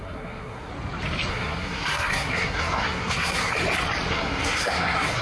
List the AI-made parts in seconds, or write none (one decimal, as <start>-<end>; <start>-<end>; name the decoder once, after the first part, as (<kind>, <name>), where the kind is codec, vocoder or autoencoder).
0.0-0.7 (codec, SNAC); 1.3-3.5; 4.1-5.2